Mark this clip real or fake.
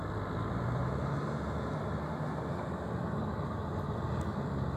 real